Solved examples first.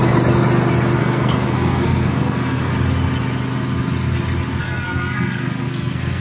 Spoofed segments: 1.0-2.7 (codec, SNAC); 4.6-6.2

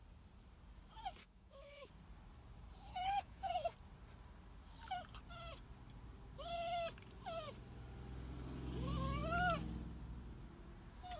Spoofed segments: 1.2-1.9 (autoencoder, DAC-VAE); 2.9-3.5

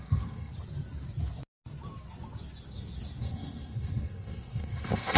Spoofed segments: 0.0-0.5 (codec, SNAC); 3.2-5.2

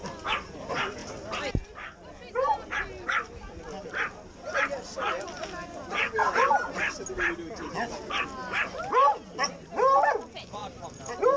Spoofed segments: 10.6-11.4 (vocoder, BigVGAN v2)

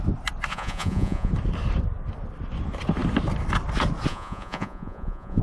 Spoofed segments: 0.5-1.3 (vocoder, Vocos); 4.1-5.4

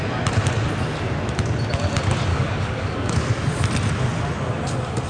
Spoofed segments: 2.3-3.1 (codec, DAC)